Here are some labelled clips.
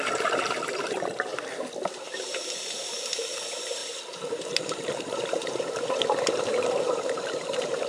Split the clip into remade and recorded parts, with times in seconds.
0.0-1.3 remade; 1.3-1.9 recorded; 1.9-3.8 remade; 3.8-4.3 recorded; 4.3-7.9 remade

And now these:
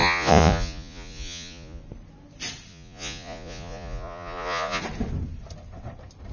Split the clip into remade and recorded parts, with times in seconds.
0.0-1.8 remade; 1.8-2.7 recorded; 2.7-4.8 remade; 4.8-6.3 recorded

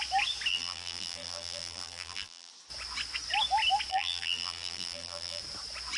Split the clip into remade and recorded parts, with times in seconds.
0.0-0.5 recorded; 0.5-2.5 remade; 2.5-3.9 recorded; 3.9-5.4 remade; 5.4-6.0 recorded

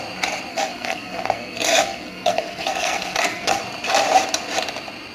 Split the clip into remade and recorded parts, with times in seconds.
0.0-0.5 recorded; 0.5-3.6 remade; 3.6-5.1 recorded

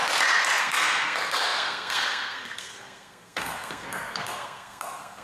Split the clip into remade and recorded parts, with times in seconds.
0.0-0.6 recorded; 0.6-5.2 remade

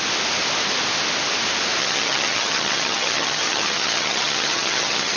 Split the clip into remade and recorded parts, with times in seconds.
0.0-1.8 recorded; 1.8-5.2 remade

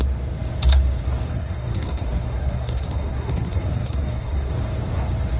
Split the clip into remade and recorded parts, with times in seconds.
0.0-1.3 recorded; 1.3-4.5 remade; 4.5-5.4 recorded

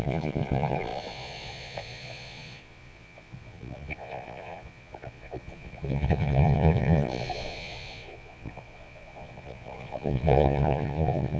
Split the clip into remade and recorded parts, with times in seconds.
0.0-11.4 remade